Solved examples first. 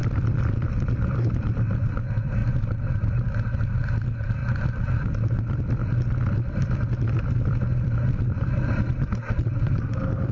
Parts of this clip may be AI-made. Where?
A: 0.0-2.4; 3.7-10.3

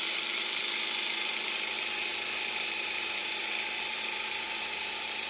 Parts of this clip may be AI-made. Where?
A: 0.0-5.3

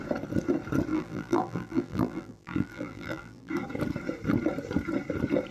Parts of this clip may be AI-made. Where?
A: 0.9-3.5